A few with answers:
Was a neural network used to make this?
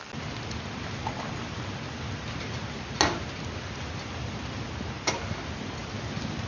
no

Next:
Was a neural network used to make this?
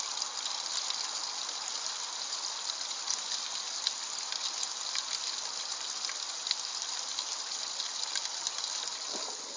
no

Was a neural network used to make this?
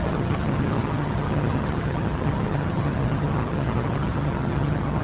yes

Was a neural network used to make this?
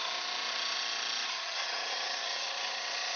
yes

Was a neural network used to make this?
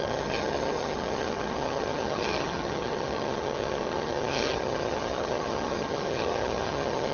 yes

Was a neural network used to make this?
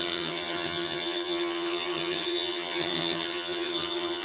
yes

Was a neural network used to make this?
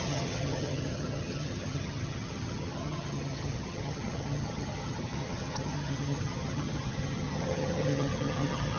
yes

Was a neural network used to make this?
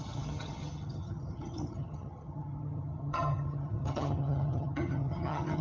yes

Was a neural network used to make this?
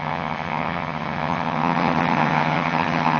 yes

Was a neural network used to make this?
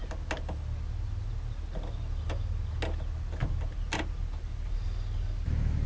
no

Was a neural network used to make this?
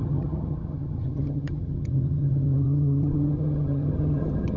yes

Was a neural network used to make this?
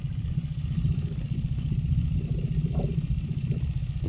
no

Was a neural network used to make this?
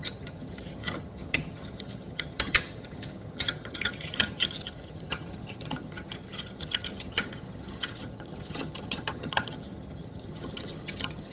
yes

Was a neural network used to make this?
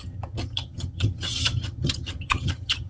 yes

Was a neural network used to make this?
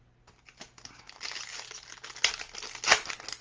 no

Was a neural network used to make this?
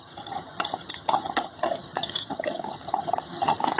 yes